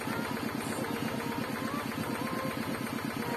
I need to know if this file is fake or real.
real